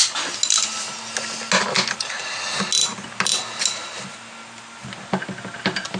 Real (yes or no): yes